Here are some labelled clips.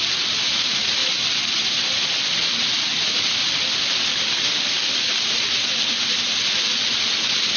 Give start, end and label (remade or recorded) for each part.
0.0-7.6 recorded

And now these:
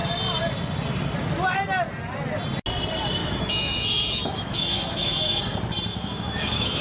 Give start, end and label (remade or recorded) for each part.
0.0-3.2 recorded; 3.2-5.4 remade; 5.4-5.9 recorded; 5.9-6.8 remade

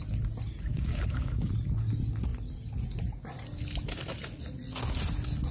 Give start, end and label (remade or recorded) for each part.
0.0-0.7 recorded; 0.7-1.5 remade; 1.5-5.5 recorded

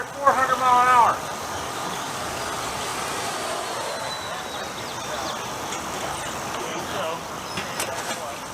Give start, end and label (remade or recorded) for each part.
0.0-1.4 recorded; 1.4-2.4 remade; 2.4-6.6 recorded; 6.6-7.2 remade; 7.2-8.5 recorded

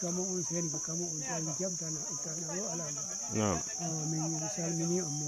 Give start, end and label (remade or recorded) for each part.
0.0-5.3 recorded

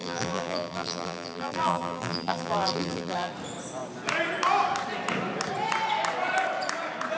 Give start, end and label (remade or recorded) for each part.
0.0-3.3 remade; 3.3-7.2 recorded

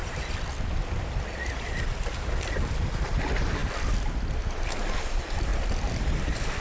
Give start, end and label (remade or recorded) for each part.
0.0-6.6 recorded